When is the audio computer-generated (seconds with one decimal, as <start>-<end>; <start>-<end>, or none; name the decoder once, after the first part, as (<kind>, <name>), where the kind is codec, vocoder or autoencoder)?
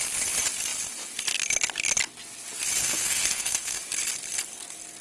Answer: 2.8-3.8 (codec, SNAC)